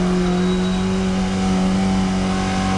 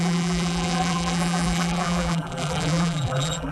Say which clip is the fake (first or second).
second